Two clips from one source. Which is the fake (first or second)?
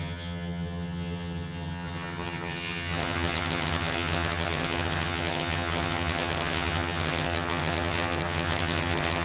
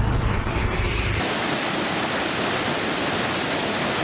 first